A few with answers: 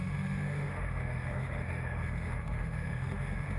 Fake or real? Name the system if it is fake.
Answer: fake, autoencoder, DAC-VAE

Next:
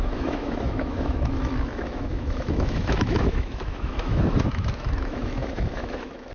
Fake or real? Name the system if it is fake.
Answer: fake, autoencoder, DAC-VAE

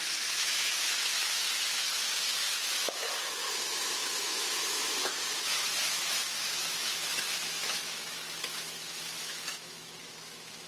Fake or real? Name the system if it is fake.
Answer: fake, autoencoder, DAC-VAE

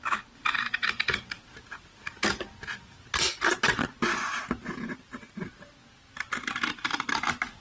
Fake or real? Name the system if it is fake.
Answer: real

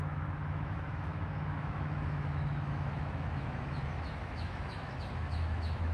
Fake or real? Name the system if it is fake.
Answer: fake, autoencoder, DAC-VAE